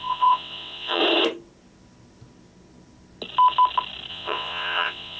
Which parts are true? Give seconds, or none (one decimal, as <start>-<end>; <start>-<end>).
1.0-4.1